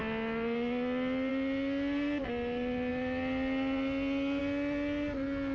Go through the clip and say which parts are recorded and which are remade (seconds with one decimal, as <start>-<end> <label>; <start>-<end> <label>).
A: 0.0-5.5 recorded